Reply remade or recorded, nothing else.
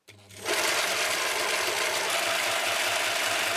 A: recorded